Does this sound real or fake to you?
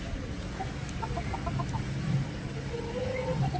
real